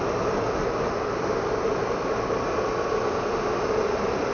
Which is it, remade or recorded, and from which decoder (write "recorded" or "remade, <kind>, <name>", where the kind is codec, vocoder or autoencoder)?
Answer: recorded